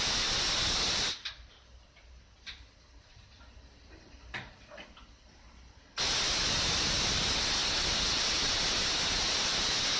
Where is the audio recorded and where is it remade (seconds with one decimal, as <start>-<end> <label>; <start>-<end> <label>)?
0.0-10.0 recorded